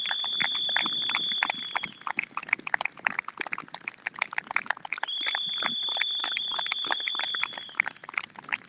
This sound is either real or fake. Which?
real